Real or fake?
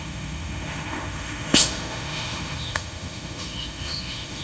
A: fake